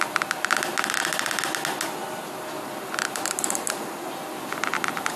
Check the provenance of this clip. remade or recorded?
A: recorded